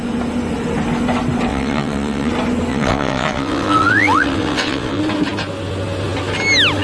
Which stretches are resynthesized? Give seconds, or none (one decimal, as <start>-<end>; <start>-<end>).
1.5-2.3; 2.7-5.0